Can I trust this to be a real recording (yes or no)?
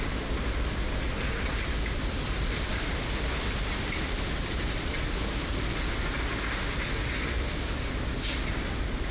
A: yes